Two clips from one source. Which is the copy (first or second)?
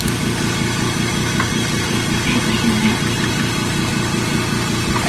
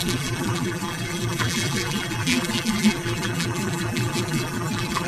second